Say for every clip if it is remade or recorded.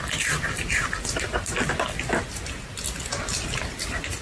recorded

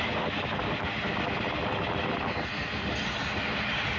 recorded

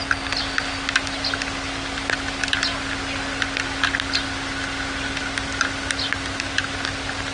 recorded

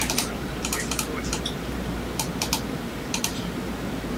remade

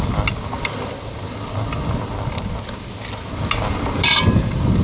recorded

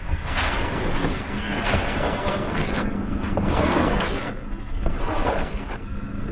remade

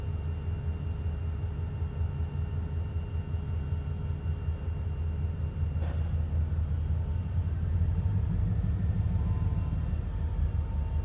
recorded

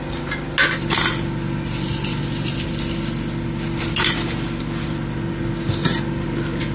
recorded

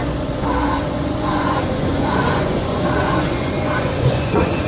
remade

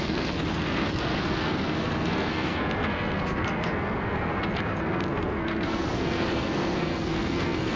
remade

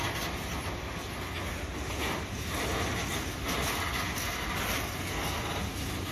recorded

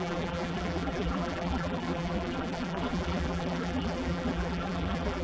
remade